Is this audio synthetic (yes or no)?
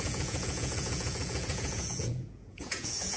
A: yes